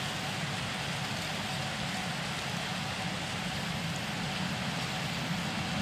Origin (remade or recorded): recorded